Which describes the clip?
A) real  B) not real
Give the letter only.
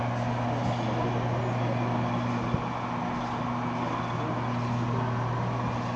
A